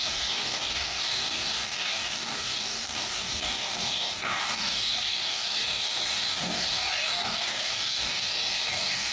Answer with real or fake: fake